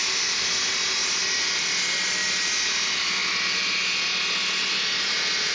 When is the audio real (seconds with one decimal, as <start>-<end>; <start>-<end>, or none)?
0.0-5.5